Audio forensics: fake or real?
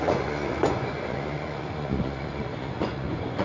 fake